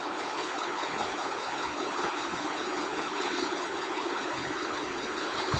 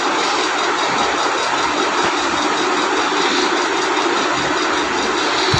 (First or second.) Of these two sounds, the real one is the second